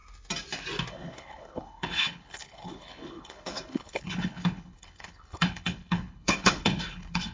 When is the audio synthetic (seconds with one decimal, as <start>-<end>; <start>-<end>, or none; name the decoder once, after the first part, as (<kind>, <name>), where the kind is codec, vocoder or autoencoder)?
0.9-7.3 (codec, HILCodec)